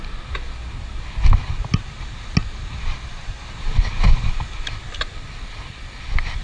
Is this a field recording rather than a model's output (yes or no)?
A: yes